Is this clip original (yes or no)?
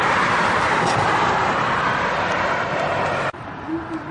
yes